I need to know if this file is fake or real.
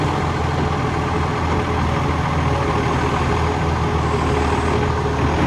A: real